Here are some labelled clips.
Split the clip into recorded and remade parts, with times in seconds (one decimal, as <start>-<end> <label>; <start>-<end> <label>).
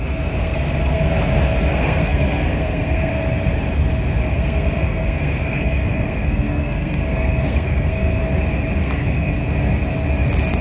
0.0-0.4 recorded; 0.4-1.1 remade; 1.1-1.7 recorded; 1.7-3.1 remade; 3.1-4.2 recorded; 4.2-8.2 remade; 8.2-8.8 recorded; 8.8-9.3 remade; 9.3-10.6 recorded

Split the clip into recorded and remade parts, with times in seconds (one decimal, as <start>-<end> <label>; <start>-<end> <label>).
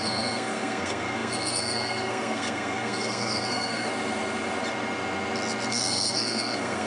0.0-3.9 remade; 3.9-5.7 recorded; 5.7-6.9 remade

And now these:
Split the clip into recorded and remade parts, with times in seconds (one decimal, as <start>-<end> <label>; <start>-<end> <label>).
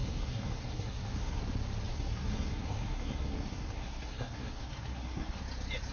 0.0-1.4 remade; 1.4-1.9 recorded; 1.9-5.4 remade; 5.4-5.9 recorded